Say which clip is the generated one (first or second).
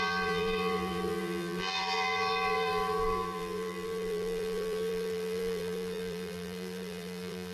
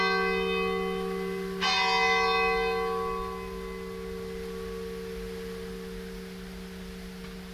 first